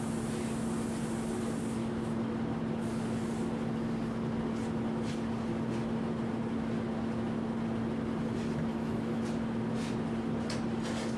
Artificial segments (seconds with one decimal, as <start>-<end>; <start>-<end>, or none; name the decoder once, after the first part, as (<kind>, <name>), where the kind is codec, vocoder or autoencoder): 8.7-9.2 (autoencoder, DAC-VAE)